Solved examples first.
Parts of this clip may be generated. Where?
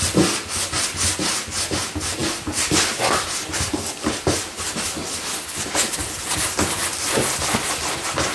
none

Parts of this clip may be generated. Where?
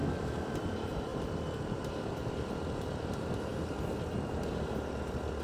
0.0-0.5 (autoencoder, DAC-VAE)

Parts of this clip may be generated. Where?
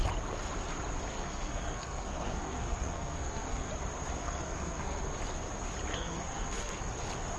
1.1-3.7 (codec, SNAC); 4.2-5.0; 5.9-6.8